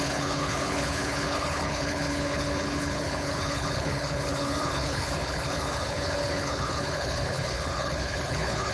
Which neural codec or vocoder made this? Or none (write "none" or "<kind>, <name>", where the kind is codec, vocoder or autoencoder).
codec, HILCodec